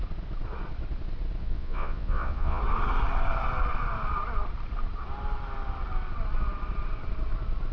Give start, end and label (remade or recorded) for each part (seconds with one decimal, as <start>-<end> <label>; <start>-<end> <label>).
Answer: 0.0-1.4 recorded; 1.4-2.6 remade; 2.6-7.7 recorded